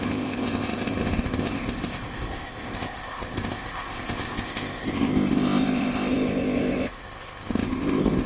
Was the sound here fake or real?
fake